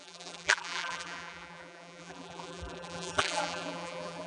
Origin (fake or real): fake